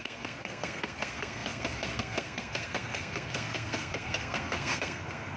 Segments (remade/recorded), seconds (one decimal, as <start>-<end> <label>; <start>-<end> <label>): 0.0-5.4 remade